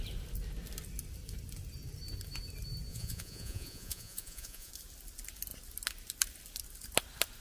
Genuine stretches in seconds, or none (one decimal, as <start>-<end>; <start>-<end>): 0.0-2.9; 4.7-7.4